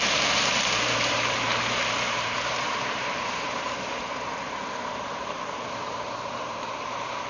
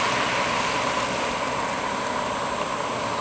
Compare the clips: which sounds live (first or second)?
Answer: second